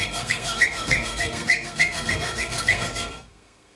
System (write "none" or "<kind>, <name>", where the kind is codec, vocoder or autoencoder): codec, SNAC